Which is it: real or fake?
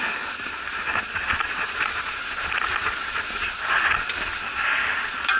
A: real